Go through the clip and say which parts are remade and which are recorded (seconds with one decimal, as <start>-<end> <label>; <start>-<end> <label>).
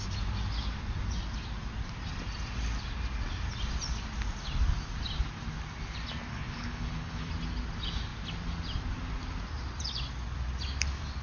0.0-6.3 recorded; 6.3-7.3 remade; 7.3-11.2 recorded